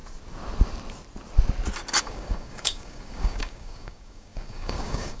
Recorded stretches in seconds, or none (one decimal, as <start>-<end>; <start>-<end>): 0.0-2.0